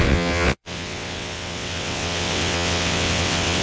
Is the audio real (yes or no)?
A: no